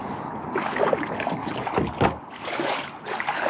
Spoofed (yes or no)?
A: yes